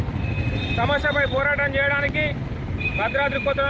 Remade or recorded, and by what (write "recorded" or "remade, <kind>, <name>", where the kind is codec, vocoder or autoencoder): recorded